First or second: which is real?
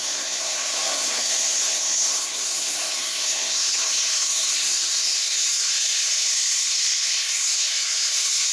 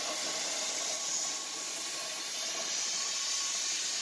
second